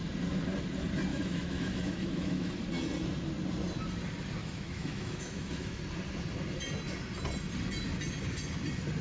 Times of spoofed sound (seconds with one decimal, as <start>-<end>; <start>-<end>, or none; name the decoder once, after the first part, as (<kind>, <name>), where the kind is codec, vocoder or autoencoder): 1.1-2.5 (autoencoder, DAC-VAE); 4.4-5.8